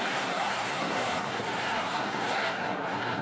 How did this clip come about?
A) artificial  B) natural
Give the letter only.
A